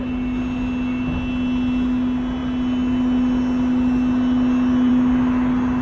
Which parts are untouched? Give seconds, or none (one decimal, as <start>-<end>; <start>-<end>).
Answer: 0.0-5.8